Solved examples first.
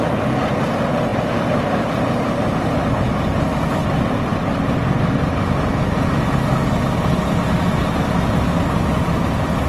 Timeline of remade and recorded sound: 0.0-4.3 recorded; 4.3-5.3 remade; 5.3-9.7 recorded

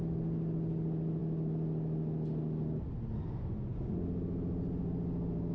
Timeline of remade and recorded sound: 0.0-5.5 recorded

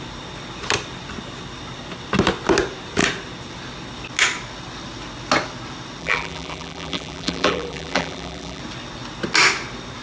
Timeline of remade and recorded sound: 0.0-6.0 recorded; 6.0-8.6 remade; 8.6-10.0 recorded

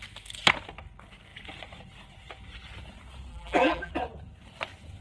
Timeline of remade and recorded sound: 0.0-3.3 recorded; 3.3-3.9 remade; 3.9-5.0 recorded

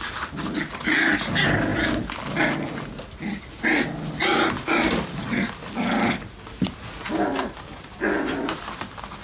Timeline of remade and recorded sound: 0.0-7.7 recorded; 7.7-8.3 remade; 8.3-9.2 recorded